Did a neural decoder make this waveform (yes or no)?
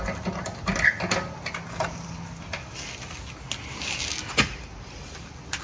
no